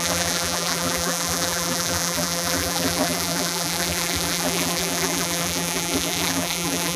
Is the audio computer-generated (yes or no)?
yes